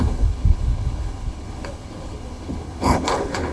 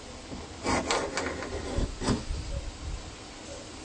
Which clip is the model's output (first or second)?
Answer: first